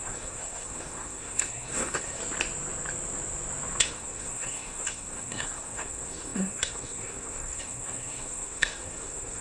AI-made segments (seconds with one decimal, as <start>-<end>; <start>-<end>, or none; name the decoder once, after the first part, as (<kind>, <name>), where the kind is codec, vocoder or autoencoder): 0.0-2.2 (codec, SNAC); 3.8-9.4